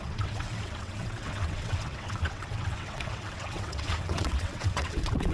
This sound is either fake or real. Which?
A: fake